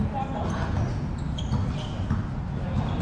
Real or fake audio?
real